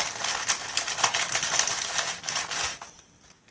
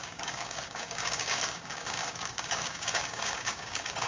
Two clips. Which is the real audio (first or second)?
first